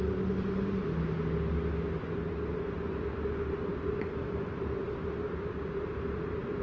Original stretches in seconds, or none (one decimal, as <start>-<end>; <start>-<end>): 0.0-6.6